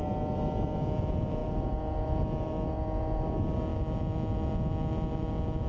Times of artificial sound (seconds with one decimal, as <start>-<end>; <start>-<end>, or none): none